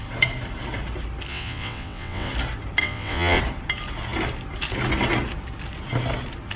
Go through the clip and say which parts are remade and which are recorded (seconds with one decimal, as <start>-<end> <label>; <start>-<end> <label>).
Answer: 0.0-1.3 recorded; 1.3-2.3 remade; 2.3-2.8 recorded; 2.8-3.4 remade; 3.4-6.6 recorded